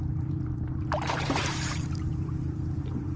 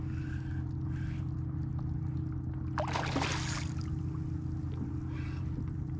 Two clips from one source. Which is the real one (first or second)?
second